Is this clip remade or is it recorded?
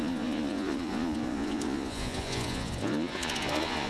remade